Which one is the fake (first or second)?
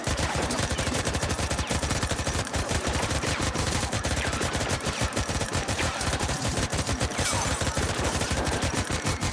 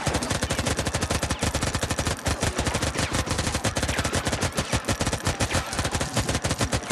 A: first